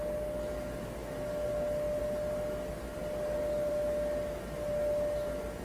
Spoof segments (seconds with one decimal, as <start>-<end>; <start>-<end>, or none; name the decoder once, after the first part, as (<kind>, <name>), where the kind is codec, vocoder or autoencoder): none